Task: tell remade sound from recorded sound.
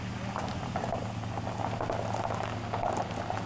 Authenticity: recorded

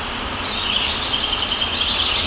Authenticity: recorded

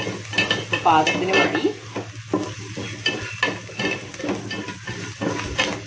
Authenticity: recorded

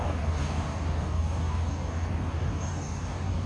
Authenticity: remade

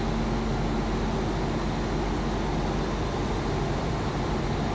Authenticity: recorded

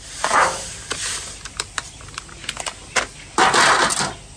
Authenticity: recorded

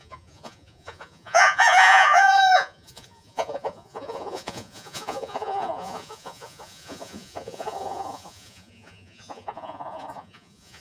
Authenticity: remade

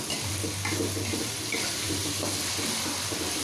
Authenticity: recorded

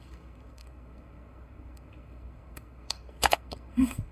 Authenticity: remade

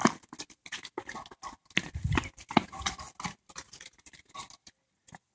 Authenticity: recorded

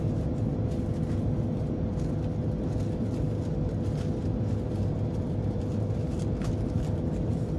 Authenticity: recorded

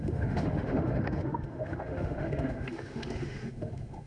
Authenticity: remade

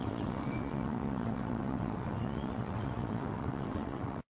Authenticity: remade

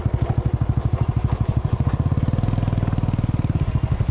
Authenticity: recorded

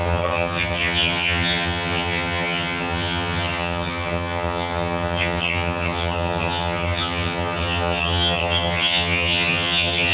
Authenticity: remade